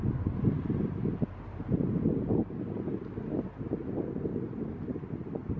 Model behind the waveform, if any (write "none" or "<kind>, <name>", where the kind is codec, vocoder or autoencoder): none